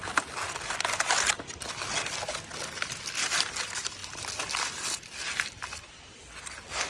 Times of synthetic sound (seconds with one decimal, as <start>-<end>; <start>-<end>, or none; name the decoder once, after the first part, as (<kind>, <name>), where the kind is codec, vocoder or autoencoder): 0.0-0.6 (vocoder, BigVGAN v2); 4.0-5.0